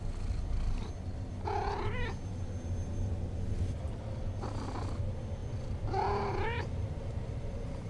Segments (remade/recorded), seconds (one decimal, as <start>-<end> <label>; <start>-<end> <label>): 0.0-7.9 recorded